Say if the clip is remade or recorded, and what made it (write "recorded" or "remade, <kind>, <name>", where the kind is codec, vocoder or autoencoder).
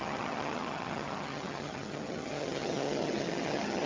remade, vocoder, HiFi-GAN